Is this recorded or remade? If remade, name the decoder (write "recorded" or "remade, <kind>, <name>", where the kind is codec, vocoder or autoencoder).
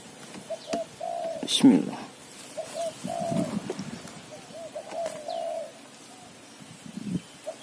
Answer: recorded